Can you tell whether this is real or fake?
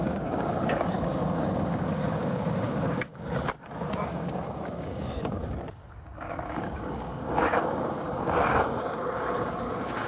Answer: fake